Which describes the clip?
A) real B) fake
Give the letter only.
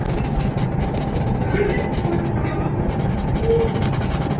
A